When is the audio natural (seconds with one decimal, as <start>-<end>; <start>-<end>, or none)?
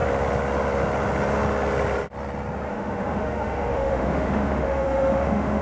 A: 0.0-2.7